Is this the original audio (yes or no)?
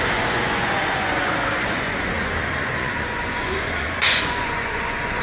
no